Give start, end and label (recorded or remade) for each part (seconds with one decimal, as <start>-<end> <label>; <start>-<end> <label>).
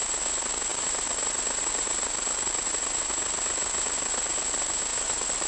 0.0-0.7 recorded; 0.7-3.0 remade; 3.0-4.9 recorded; 4.9-5.5 remade